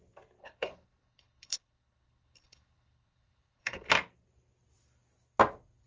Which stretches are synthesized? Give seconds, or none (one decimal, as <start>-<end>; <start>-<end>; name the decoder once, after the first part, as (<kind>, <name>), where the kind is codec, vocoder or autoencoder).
0.4-3.9 (codec, HILCodec)